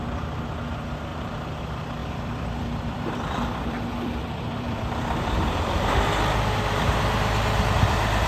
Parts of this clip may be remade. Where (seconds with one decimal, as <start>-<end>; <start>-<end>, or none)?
1.1-1.6; 2.0-7.0